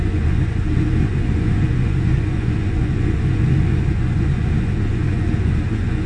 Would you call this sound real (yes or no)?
no